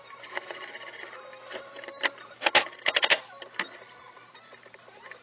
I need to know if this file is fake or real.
real